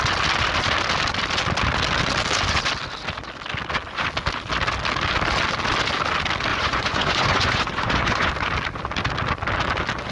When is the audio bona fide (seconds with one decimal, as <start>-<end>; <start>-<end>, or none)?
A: 0.0-6.5; 8.3-10.1